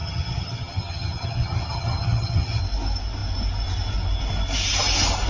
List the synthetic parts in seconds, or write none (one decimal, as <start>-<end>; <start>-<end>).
0.0-2.6